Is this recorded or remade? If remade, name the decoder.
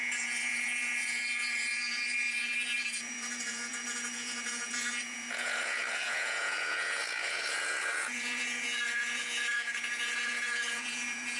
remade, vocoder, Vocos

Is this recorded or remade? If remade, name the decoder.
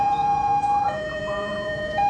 remade, vocoder, Vocos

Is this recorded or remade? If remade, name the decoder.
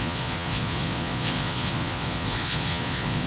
remade, vocoder, Vocos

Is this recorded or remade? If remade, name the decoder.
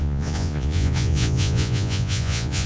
remade, vocoder, Vocos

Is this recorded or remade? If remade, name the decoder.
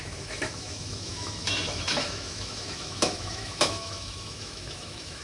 remade, autoencoder, DAC-VAE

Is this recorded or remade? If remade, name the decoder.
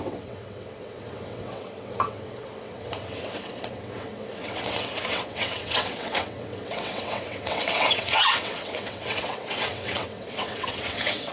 remade, vocoder, WaveNeXt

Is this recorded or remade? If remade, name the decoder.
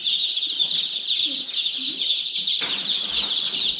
remade, vocoder, BigVGAN v2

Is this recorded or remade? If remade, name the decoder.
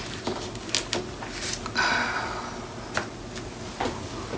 recorded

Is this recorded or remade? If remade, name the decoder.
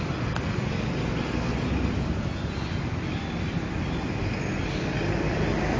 recorded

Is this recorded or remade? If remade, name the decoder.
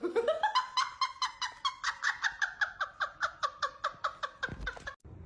recorded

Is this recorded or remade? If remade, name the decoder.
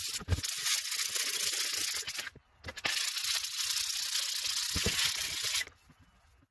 recorded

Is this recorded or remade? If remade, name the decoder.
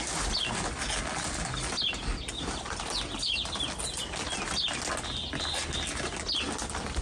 recorded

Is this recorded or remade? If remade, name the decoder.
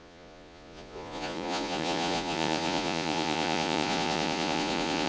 remade, vocoder, Vocos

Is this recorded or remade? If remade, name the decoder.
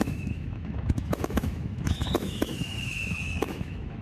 remade, autoencoder, DAC-VAE